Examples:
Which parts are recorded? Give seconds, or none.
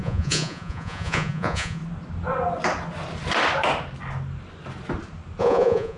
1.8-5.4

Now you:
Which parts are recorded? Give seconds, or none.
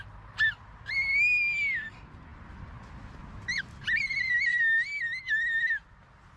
0.0-6.4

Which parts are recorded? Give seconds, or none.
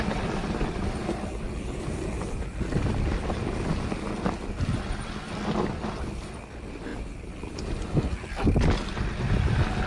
0.0-9.9